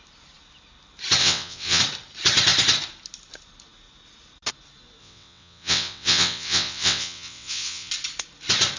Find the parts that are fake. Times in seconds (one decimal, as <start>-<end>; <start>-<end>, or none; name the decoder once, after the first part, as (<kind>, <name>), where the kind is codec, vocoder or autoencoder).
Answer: 1.2-1.8 (vocoder, WaveNeXt); 5.0-7.9